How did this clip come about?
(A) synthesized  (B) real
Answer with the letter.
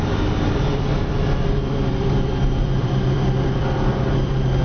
A